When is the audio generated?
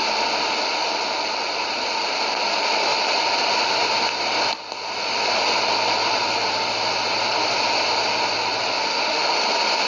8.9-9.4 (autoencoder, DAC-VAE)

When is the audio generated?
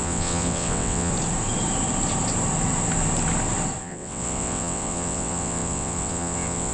0.0-1.1 (vocoder, WaveNeXt); 3.8-6.7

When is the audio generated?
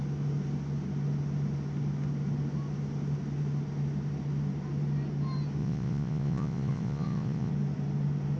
5.6-7.5 (vocoder, Vocos)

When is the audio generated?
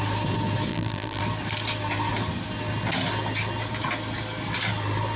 0.7-1.2 (vocoder, BigVGAN v2)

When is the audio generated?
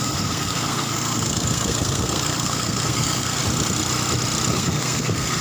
0.0-3.4 (codec, SNAC); 4.5-5.4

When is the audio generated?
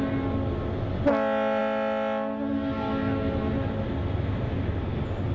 none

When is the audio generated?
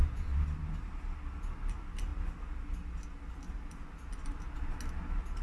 0.0-1.0 (vocoder, BigVGAN v2)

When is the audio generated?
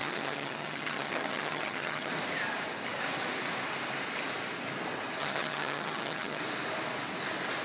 0.0-2.1 (vocoder, HiFi-GAN); 5.2-6.4